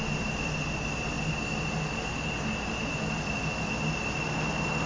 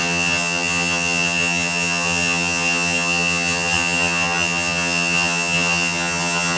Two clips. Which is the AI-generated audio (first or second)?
second